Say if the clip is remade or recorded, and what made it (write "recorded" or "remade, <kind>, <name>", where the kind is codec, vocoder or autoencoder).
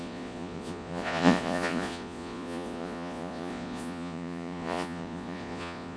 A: remade, vocoder, Vocos